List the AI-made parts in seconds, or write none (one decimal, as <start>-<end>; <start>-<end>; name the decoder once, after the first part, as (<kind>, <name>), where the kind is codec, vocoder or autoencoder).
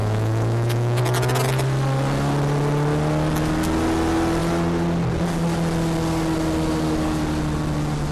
0.0-1.0 (autoencoder, DAC-VAE)